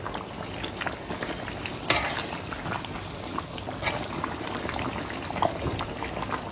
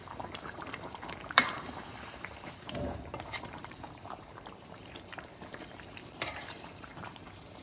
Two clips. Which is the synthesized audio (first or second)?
second